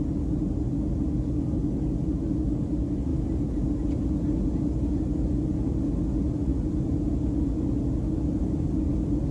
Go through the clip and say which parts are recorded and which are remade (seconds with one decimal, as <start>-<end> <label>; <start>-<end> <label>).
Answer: 0.0-9.3 recorded